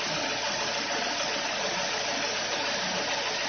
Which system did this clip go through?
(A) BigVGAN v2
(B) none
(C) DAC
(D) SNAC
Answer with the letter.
B